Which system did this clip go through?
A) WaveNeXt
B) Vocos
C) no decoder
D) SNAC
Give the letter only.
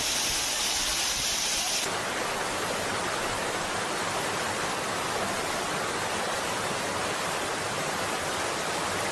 C